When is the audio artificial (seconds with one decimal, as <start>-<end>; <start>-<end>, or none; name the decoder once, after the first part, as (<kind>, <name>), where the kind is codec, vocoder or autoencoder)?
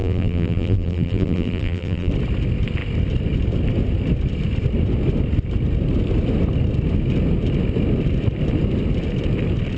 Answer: 0.0-2.1 (vocoder, BigVGAN v2)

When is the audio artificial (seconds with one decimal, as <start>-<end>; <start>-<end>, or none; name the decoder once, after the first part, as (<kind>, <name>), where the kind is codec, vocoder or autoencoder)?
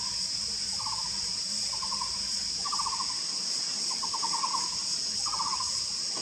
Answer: 2.3-4.2 (vocoder, BigVGAN v2)